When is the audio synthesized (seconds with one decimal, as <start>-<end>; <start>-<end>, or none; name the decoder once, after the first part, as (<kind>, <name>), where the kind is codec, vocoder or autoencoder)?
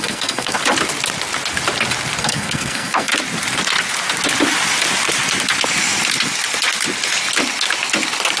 0.0-0.6 (codec, SNAC); 2.2-3.1